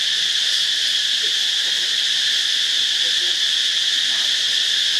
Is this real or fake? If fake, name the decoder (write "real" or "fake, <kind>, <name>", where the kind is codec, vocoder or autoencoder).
real